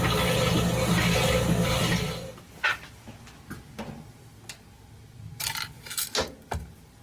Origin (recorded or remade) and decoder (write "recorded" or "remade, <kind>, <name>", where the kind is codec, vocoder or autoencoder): recorded